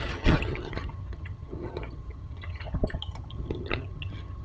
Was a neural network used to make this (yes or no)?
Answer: yes